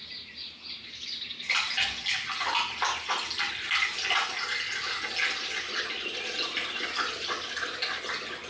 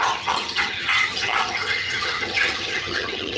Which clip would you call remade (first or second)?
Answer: second